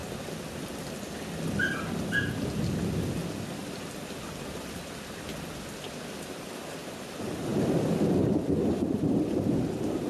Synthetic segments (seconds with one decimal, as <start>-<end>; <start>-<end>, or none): none

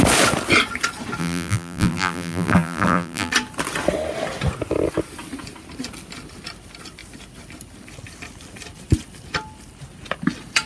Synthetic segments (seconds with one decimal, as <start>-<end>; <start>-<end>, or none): 1.2-3.3

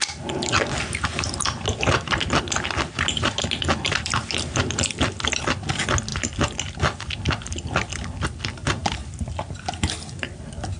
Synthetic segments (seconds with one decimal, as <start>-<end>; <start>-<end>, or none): none

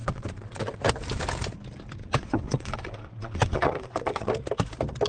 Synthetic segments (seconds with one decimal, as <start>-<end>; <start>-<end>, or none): 0.0-0.8; 2.0-4.3

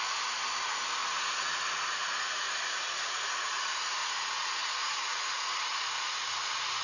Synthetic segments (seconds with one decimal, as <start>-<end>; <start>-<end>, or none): 1.0-1.6; 2.0-3.6; 4.0-5.5